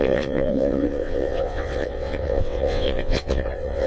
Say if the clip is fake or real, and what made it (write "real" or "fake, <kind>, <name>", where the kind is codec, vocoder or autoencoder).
fake, vocoder, WaveNeXt